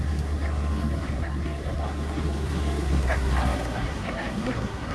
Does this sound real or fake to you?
fake